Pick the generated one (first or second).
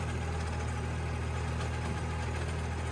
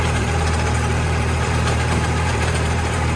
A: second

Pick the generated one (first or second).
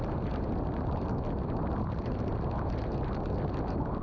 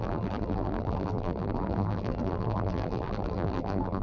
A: second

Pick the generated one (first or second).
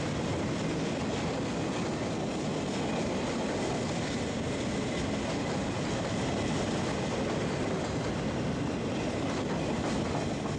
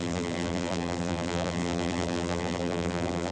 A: second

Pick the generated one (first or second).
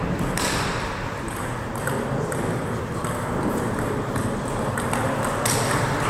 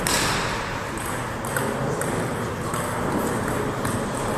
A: first